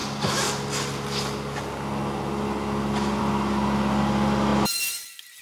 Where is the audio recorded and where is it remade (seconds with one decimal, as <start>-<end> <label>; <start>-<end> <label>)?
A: 0.0-5.4 recorded